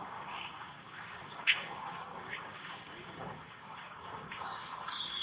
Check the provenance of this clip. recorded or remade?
remade